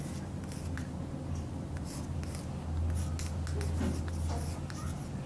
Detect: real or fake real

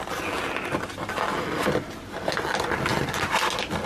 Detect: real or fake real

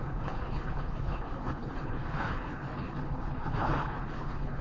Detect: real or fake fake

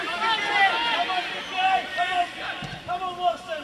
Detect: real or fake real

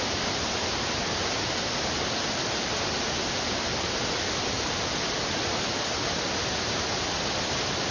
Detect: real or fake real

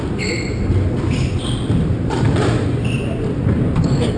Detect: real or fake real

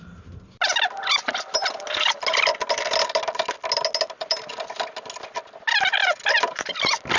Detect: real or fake real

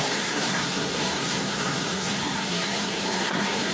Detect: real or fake fake